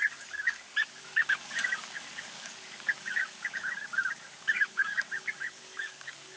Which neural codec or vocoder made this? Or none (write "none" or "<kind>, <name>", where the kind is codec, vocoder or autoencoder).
codec, DAC